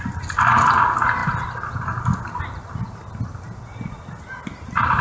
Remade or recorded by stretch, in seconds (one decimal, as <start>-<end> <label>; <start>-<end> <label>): 0.0-5.0 recorded